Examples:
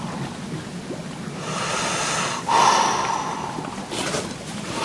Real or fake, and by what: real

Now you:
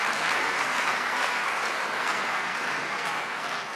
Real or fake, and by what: fake, codec, SNAC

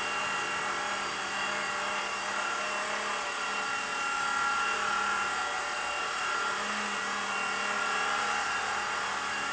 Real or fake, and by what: real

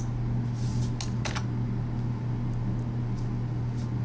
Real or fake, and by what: real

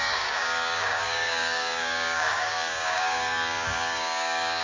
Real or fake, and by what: fake, codec, DAC